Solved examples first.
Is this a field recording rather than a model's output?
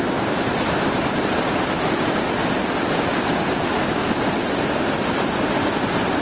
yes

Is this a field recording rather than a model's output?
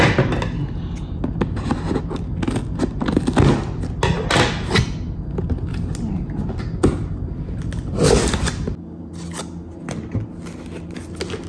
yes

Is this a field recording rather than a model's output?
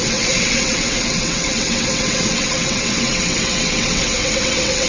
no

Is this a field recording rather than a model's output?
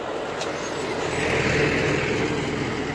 yes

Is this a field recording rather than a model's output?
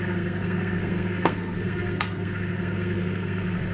no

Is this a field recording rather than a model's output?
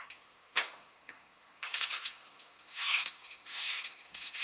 no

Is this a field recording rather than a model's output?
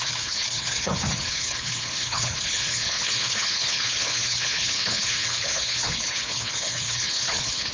no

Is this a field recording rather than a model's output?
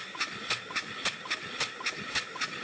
yes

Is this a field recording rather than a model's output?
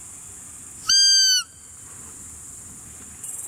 yes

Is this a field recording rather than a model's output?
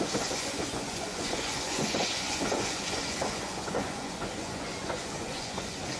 no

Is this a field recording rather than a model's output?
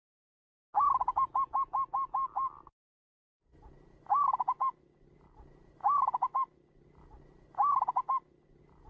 yes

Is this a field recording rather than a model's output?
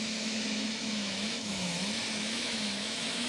no